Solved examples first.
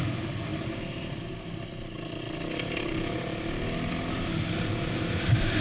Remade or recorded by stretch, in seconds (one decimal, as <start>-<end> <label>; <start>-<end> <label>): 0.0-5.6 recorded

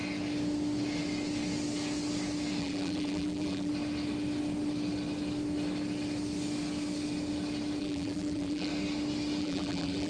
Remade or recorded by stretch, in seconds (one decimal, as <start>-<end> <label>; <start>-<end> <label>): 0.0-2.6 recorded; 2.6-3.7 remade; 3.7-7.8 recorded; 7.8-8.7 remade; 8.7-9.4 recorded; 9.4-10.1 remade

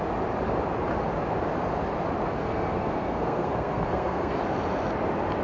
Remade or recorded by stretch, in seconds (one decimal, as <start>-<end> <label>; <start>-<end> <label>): 0.0-2.4 recorded; 2.4-4.4 remade; 4.4-5.4 recorded